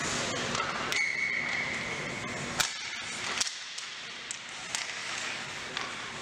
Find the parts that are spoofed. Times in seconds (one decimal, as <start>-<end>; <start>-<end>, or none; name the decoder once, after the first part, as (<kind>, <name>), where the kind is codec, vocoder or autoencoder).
5.0-5.7 (codec, DAC)